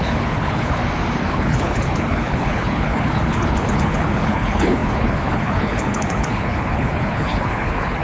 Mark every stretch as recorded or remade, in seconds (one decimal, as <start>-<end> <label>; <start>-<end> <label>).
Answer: 0.0-0.8 remade; 0.8-1.3 recorded; 1.3-8.0 remade